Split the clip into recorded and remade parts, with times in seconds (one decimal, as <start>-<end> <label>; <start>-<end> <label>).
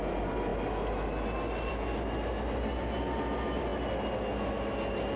0.0-5.2 recorded